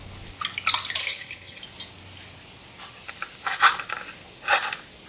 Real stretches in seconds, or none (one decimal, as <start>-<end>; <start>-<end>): 0.0-1.0; 1.6-5.1